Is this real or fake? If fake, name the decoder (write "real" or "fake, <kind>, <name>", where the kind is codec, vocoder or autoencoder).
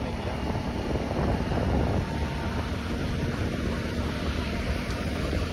fake, vocoder, BigVGAN v2